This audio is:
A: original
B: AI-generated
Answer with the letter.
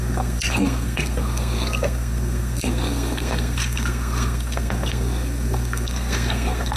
B